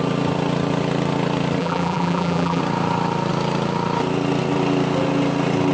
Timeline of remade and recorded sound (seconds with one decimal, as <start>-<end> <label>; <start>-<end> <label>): 0.0-1.6 recorded; 1.6-2.6 remade; 2.6-5.7 recorded